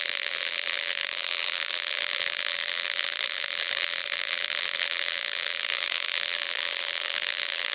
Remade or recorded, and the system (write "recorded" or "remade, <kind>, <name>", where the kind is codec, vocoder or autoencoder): remade, vocoder, BigVGAN v2